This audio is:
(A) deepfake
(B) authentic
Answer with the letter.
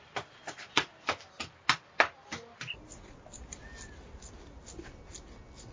B